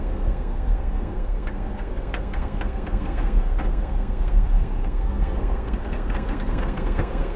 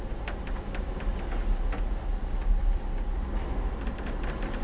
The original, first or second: second